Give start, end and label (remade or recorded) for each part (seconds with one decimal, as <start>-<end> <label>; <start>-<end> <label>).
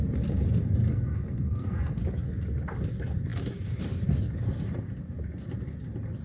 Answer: 0.0-0.9 recorded; 0.9-2.0 remade; 2.0-6.2 recorded